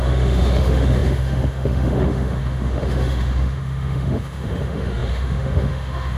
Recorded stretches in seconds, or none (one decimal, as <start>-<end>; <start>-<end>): none